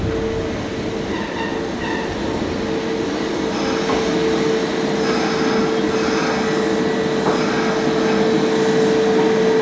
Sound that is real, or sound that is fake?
real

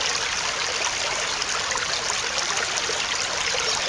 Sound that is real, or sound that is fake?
real